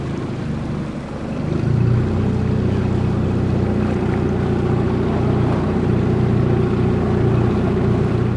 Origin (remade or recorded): recorded